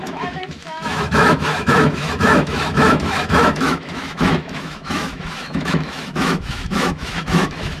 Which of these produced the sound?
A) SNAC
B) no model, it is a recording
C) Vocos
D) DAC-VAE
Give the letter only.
D